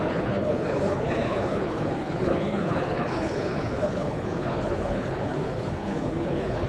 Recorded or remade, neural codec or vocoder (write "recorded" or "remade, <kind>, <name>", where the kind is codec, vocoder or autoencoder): remade, codec, HILCodec